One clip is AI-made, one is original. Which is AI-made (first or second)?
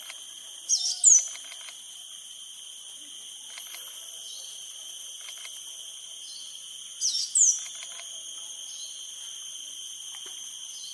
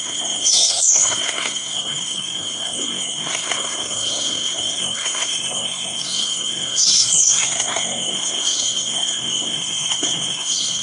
second